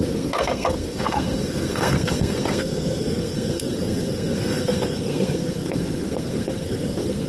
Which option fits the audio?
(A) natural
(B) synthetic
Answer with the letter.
B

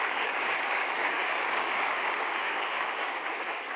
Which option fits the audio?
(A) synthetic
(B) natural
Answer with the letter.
A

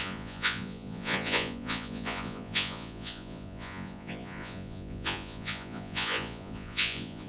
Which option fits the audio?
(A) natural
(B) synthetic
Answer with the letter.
B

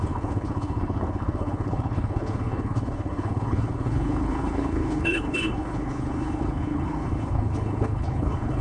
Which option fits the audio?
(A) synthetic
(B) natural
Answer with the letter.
A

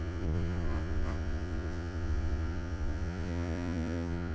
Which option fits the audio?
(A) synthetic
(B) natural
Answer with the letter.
A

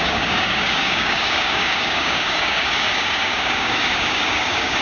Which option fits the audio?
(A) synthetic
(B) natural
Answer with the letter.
A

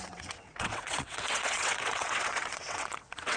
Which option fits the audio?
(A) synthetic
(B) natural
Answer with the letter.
A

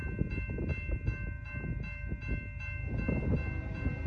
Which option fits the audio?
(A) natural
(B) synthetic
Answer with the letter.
A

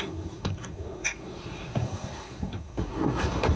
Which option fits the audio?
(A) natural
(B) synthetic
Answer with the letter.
B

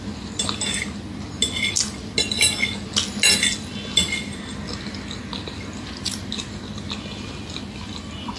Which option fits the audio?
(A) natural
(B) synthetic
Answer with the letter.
A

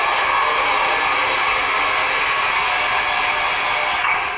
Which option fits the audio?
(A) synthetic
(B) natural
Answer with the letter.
B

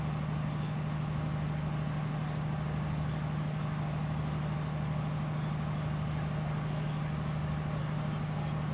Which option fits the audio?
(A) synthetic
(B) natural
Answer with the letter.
B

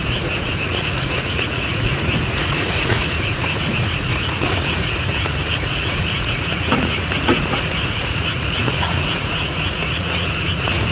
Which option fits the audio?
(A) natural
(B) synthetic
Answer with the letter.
B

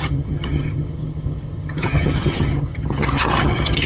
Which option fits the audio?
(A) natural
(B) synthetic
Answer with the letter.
B